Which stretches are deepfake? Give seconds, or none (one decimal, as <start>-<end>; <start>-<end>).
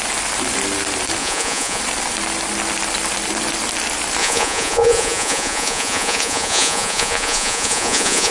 1.2-1.8; 4.2-8.3